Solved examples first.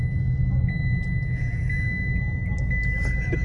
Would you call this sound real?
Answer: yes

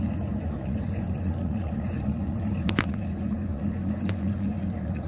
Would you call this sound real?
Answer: no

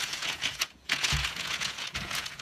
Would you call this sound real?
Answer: no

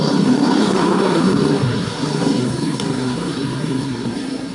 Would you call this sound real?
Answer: no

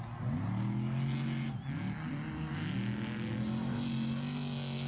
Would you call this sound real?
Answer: yes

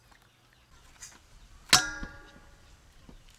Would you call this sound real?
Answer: yes